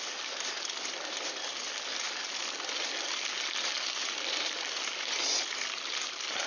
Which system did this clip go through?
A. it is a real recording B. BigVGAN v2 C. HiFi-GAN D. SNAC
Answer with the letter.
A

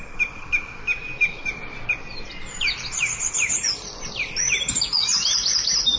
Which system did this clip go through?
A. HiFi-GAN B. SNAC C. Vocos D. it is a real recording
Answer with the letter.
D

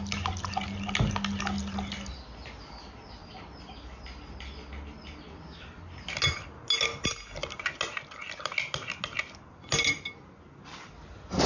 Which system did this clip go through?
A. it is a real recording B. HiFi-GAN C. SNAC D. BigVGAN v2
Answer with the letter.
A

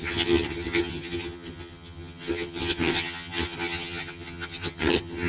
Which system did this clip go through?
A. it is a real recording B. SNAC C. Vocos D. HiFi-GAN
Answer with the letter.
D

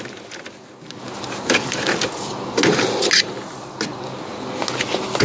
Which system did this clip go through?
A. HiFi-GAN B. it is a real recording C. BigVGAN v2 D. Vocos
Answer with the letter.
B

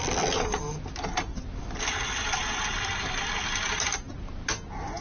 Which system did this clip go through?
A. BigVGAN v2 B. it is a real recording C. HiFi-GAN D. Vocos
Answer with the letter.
B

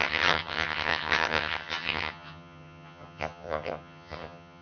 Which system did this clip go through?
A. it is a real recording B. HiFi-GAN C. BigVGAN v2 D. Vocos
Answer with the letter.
B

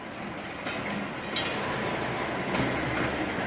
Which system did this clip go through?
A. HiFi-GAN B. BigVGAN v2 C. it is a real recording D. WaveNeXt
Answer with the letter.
C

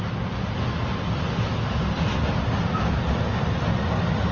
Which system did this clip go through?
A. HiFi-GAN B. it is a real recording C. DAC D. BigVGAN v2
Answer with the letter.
B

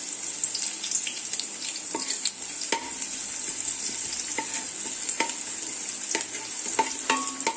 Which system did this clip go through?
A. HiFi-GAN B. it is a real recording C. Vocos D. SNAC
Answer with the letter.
B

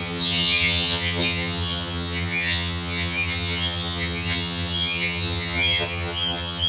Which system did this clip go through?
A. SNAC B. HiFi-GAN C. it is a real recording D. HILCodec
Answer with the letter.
B